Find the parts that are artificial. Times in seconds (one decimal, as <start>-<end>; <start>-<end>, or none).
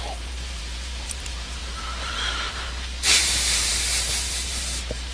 0.0-5.1